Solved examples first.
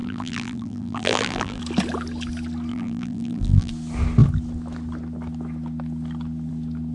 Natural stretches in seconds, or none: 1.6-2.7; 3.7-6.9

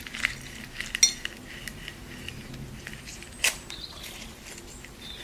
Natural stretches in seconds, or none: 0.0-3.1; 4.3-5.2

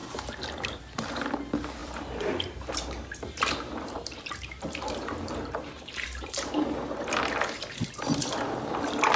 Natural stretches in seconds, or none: 0.8-1.8; 6.6-9.2

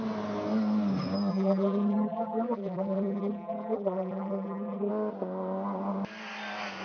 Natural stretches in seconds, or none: 0.0-1.3; 4.9-6.8

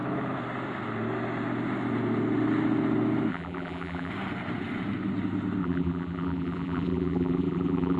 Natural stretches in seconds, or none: 0.0-3.3; 4.1-5.6